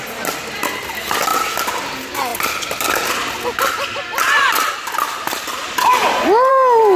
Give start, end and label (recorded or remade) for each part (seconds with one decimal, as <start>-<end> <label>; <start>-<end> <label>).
0.0-7.0 recorded